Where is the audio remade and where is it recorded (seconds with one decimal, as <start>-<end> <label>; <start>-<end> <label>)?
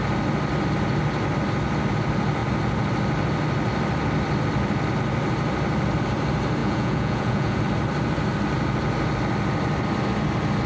0.0-6.6 recorded; 6.6-7.6 remade; 7.6-10.7 recorded